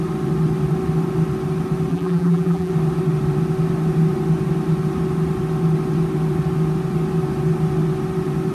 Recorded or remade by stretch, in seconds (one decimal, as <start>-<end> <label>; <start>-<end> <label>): 0.0-1.9 recorded; 1.9-2.7 remade; 2.7-8.5 recorded